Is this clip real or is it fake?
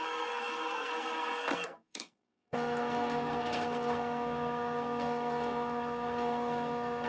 fake